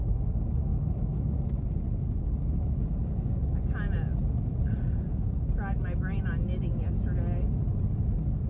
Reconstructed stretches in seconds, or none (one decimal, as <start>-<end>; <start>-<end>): 0.7-1.7